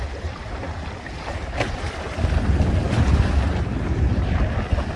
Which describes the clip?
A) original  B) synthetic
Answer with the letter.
A